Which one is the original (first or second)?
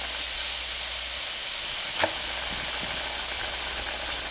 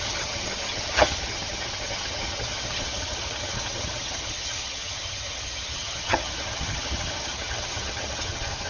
first